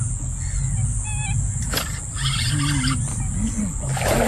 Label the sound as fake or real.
real